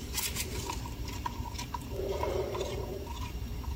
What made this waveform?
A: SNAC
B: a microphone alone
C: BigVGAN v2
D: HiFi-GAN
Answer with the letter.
C